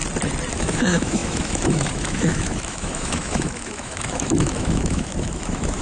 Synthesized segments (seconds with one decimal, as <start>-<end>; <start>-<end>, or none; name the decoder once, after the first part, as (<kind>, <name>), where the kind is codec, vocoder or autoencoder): 0.5-5.8 (autoencoder, DAC-VAE)